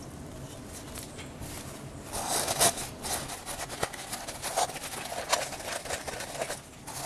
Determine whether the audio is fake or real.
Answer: real